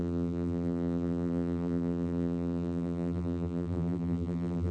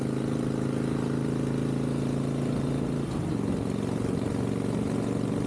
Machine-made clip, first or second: first